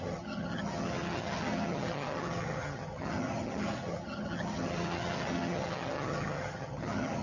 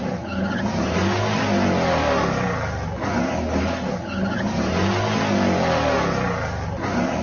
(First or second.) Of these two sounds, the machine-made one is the first